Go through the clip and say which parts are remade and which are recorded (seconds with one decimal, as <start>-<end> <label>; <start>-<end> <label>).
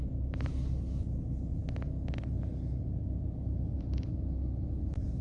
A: 0.0-5.2 recorded